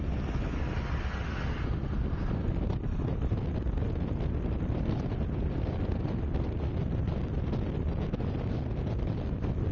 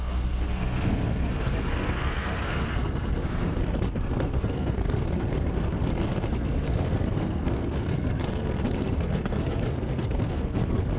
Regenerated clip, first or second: second